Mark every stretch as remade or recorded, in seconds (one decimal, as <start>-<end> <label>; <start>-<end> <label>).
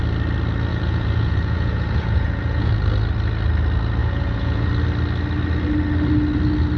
0.0-0.7 recorded; 0.7-2.7 remade; 2.7-4.0 recorded; 4.0-4.7 remade; 4.7-6.8 recorded